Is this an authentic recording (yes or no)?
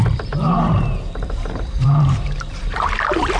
no